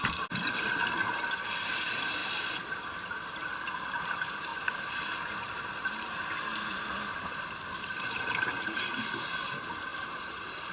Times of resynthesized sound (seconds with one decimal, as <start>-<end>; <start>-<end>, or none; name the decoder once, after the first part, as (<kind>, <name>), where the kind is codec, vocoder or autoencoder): 4.5-8.8 (vocoder, BigVGAN v2); 9.9-10.7